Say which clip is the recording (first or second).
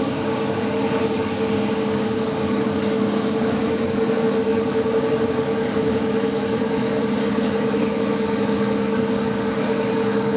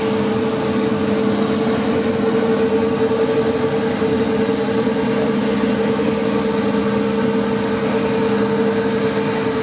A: second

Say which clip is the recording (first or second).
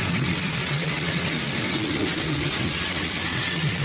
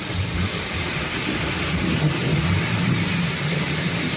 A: second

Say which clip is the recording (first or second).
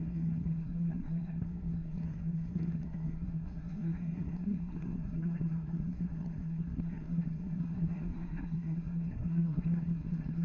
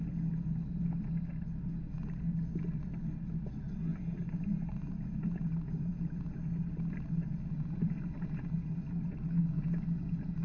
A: second